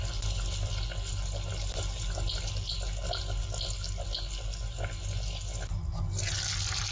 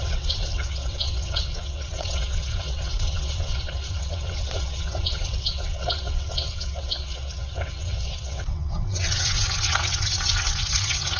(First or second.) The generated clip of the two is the second